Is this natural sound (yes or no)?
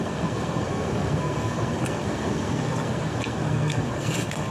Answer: no